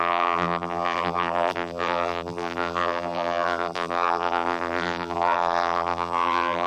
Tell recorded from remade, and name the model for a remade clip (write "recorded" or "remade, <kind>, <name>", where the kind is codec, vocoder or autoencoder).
remade, vocoder, BigVGAN v2